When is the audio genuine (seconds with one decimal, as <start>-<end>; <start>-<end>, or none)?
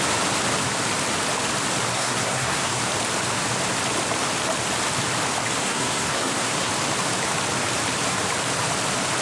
0.0-1.9; 2.8-5.6; 6.7-9.2